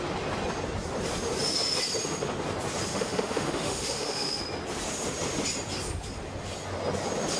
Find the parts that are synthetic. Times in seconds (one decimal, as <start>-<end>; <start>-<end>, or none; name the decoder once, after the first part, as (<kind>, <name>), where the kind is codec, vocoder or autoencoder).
2.9-4.4 (autoencoder, DAC-VAE)